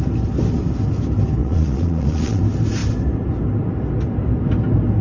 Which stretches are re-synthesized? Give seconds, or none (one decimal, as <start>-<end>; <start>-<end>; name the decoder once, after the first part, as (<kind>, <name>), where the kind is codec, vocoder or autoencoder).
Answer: 1.4-2.4 (vocoder, Vocos)